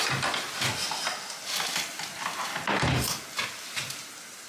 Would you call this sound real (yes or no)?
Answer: yes